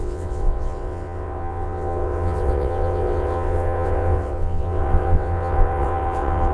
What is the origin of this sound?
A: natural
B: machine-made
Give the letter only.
B